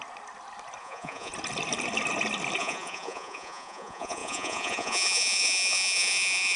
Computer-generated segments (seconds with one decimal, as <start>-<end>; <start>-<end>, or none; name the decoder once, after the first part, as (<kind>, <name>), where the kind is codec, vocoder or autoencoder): 0.8-1.3 (vocoder, Vocos); 2.6-6.6